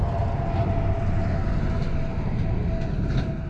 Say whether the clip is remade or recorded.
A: recorded